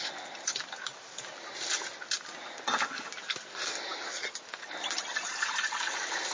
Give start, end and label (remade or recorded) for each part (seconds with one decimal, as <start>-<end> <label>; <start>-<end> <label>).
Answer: 0.0-6.3 recorded